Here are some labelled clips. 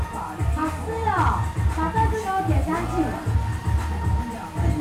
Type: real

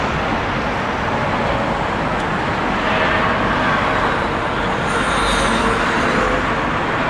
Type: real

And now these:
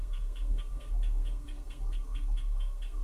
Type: fake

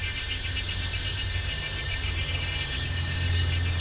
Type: fake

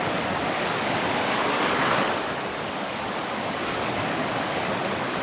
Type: fake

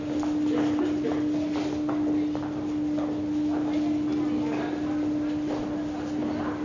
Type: real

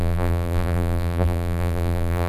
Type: fake